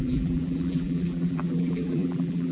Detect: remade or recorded remade